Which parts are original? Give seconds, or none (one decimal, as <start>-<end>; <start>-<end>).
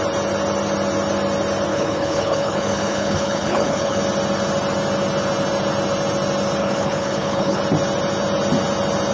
0.0-1.7; 4.0-6.6; 7.6-9.1